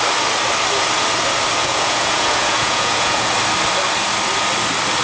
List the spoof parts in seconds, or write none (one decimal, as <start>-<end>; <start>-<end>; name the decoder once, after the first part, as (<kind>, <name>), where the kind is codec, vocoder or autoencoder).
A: 1.6-3.3 (vocoder, Vocos)